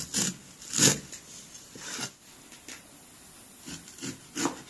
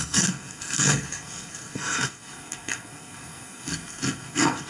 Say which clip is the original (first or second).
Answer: first